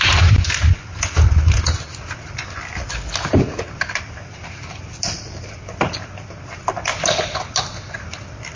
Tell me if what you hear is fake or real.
real